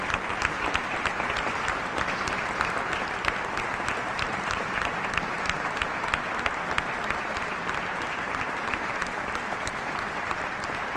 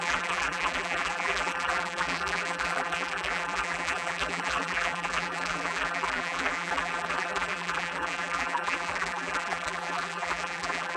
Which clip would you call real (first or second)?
first